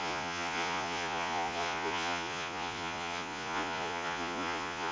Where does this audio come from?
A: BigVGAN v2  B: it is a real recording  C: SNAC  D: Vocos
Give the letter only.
D